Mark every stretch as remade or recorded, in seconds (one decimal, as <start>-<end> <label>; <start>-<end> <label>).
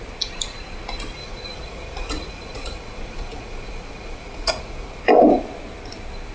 0.0-1.2 recorded; 1.2-5.0 remade; 5.0-6.3 recorded